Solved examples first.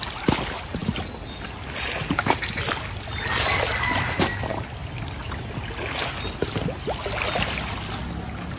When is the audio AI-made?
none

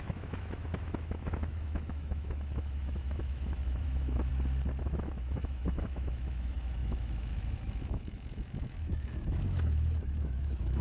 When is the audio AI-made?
0.0-4.3 (autoencoder, DAC-VAE); 4.8-10.8

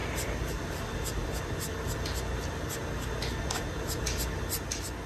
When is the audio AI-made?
none

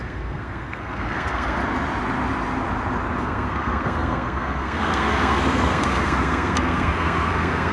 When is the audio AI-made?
0.0-1.6 (codec, SNAC); 3.2-7.7

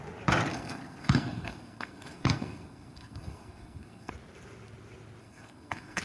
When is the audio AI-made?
0.5-4.1 (codec, SNAC); 5.2-6.0